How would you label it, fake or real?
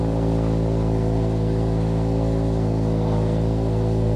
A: fake